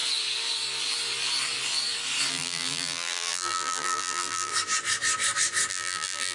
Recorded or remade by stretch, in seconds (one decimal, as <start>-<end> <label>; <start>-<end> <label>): 0.0-2.3 recorded; 2.3-4.5 remade; 4.5-5.7 recorded; 5.7-6.3 remade